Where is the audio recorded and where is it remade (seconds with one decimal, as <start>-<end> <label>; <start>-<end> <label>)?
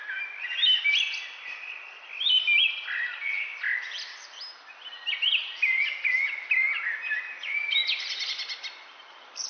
0.0-9.5 recorded